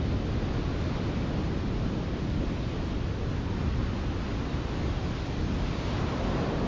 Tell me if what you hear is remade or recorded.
recorded